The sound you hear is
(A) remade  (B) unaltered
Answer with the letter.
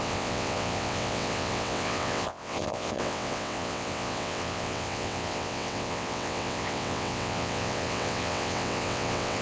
A